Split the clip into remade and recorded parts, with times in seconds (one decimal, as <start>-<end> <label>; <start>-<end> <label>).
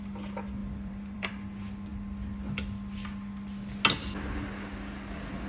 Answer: 0.0-0.6 recorded; 0.6-1.3 remade; 1.3-5.5 recorded